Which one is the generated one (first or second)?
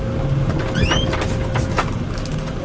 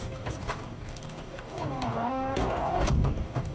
second